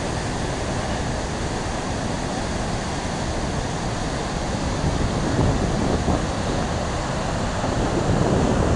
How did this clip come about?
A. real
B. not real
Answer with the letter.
A